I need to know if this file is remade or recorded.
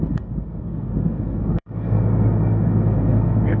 remade